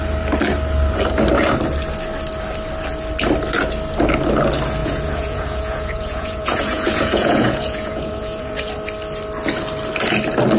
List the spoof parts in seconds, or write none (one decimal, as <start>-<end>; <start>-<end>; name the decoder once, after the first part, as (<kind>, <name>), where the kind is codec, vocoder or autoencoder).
4.8-8.7 (vocoder, Vocos)